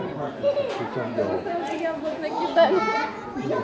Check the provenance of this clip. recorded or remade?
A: recorded